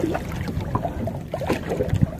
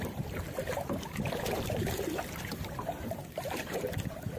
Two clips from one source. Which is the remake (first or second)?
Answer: second